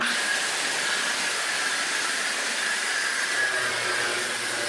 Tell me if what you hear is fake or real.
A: real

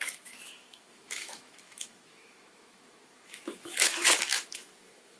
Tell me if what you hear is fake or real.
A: fake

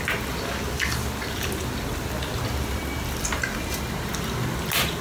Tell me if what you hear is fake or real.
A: real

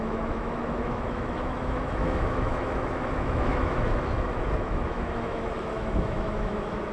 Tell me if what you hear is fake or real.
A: fake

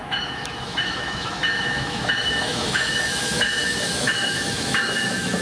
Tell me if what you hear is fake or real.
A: fake